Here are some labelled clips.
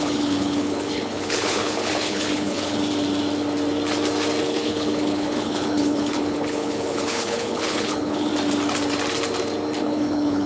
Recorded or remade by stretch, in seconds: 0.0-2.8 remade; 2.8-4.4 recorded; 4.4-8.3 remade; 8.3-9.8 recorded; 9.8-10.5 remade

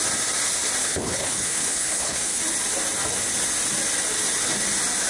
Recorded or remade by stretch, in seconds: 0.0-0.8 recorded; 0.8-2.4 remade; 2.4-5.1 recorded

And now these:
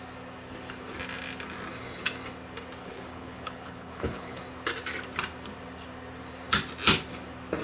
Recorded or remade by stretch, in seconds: 0.0-2.8 recorded; 2.8-4.4 remade; 4.4-7.6 recorded